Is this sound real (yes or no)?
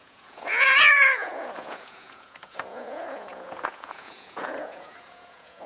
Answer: no